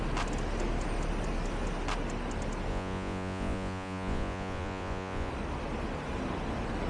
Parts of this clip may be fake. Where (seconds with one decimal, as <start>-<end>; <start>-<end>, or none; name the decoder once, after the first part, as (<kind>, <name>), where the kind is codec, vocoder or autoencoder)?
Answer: 2.7-5.3 (vocoder, Vocos)